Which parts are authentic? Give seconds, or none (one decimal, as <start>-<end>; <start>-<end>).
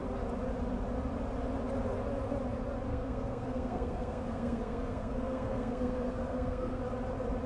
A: 0.0-2.9; 6.8-7.5